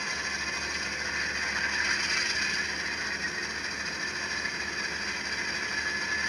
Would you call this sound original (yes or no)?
yes